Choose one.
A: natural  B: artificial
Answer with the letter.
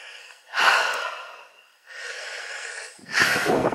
B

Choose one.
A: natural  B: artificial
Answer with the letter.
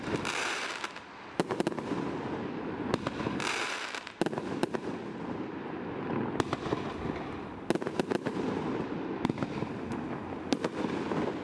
A